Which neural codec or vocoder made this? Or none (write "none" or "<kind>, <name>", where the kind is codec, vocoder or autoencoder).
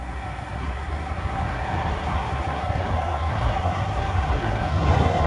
codec, SNAC